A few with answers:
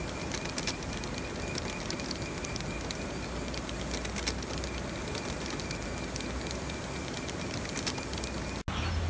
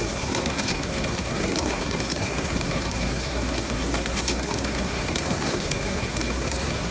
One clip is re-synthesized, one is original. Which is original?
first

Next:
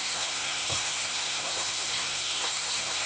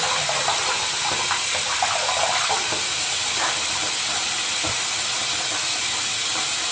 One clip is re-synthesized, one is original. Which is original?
second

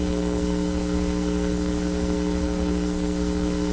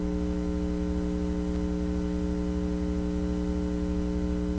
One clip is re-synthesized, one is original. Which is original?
second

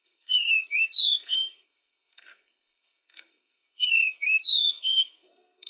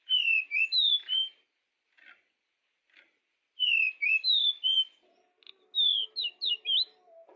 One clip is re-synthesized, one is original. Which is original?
second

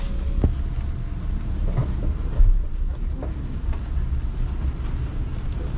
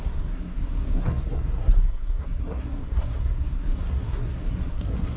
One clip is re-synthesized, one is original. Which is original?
first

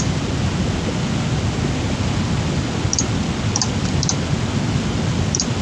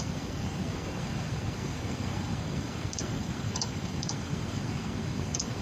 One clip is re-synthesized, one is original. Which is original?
first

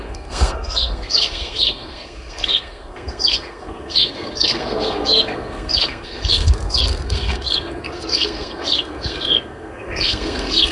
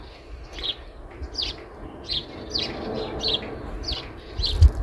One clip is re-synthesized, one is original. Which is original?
second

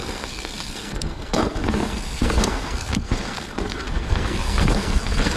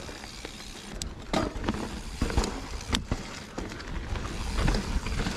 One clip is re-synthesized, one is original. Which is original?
second